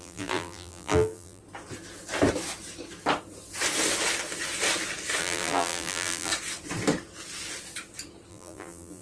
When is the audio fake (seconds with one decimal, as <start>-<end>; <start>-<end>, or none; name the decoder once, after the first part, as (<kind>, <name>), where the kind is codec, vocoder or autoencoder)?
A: 0.0-1.4 (vocoder, BigVGAN v2); 5.2-6.3; 8.3-9.0